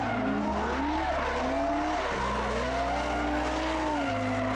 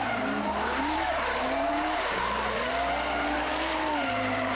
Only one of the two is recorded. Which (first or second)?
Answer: first